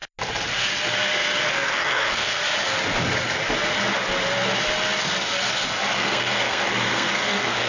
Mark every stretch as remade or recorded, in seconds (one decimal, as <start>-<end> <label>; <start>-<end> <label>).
0.0-1.5 recorded; 1.5-2.4 remade; 2.4-5.9 recorded; 5.9-7.7 remade